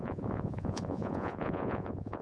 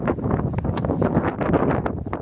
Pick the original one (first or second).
second